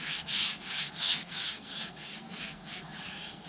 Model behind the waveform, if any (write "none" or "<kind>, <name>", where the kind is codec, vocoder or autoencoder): codec, SNAC